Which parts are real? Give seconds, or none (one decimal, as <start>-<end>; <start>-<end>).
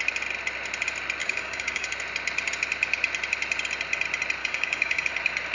0.0-1.2; 1.9-4.4; 5.1-5.5